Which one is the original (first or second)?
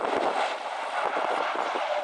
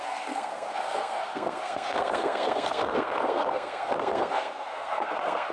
first